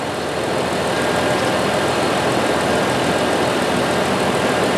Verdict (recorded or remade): recorded